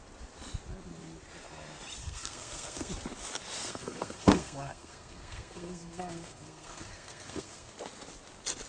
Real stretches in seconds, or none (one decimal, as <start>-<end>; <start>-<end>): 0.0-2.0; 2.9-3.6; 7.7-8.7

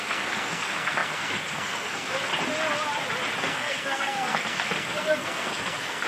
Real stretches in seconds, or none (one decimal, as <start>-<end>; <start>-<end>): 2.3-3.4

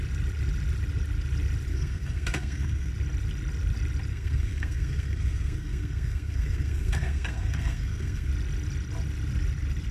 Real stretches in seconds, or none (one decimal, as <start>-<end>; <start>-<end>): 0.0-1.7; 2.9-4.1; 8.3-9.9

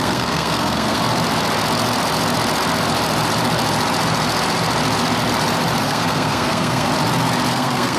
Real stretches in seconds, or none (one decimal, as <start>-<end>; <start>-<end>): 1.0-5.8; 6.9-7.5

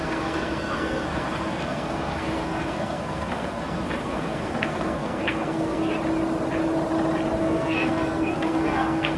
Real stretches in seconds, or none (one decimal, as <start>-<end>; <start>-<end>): 5.9-7.4

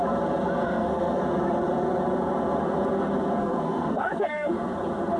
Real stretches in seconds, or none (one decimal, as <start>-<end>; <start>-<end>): 0.0-0.6; 1.2-3.4; 4.5-5.2